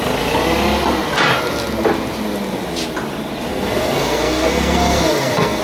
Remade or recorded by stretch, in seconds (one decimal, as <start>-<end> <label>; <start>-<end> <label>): 0.0-3.5 recorded; 3.5-5.6 remade